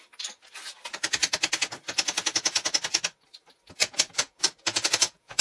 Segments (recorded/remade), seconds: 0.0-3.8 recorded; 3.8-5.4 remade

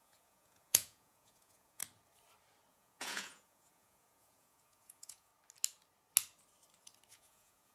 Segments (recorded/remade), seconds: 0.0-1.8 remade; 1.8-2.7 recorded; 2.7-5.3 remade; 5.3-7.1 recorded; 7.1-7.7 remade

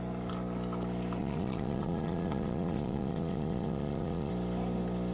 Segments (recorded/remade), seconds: 0.0-1.2 recorded; 1.2-4.3 remade; 4.3-5.1 recorded

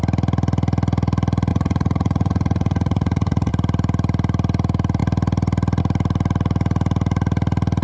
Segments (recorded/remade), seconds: 0.0-1.5 recorded; 1.5-3.5 remade; 3.5-7.8 recorded

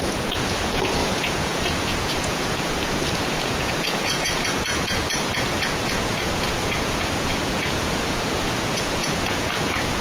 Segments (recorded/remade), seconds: 0.0-10.0 remade

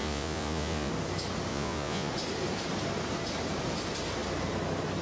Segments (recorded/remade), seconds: 0.0-0.9 remade; 0.9-1.5 recorded; 1.5-2.1 remade; 2.1-5.0 recorded

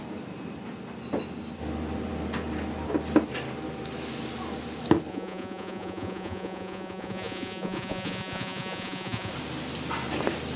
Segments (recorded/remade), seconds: 0.0-5.1 recorded; 5.1-9.3 remade; 9.3-10.6 recorded

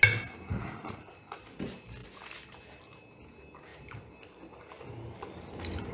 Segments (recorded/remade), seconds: 0.0-0.5 recorded; 0.5-1.1 remade; 1.1-5.9 recorded